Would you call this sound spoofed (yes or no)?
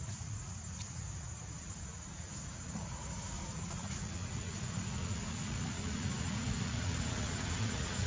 yes